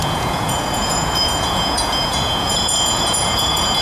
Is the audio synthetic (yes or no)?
yes